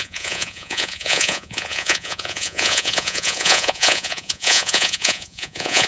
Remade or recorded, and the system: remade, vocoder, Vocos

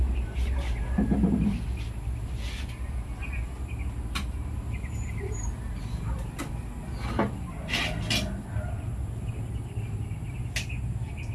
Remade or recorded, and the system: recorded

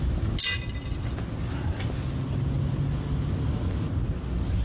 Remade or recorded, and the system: recorded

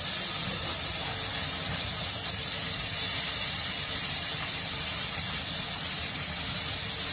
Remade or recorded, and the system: recorded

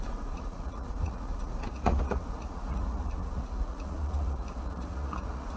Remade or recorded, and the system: remade, vocoder, Vocos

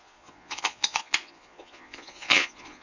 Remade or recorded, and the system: remade, vocoder, Vocos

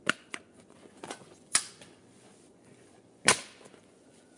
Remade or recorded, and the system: remade, vocoder, Vocos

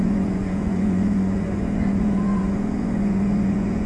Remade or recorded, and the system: remade, vocoder, Vocos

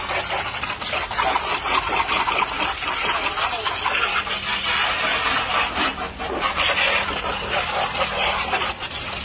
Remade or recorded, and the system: recorded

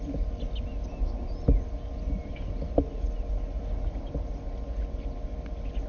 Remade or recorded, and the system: recorded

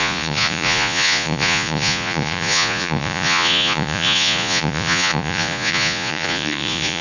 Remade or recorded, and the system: remade, vocoder, Vocos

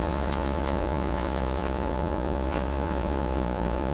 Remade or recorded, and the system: remade, vocoder, Vocos